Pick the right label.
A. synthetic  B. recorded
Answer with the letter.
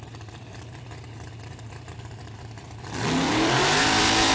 A